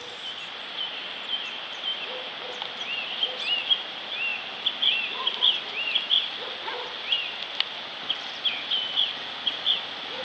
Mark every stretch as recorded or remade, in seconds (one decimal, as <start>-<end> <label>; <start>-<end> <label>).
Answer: 0.0-10.2 recorded